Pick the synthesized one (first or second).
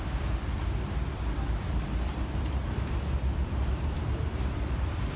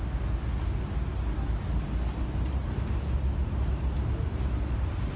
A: first